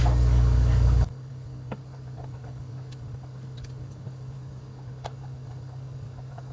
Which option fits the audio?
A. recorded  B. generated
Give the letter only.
B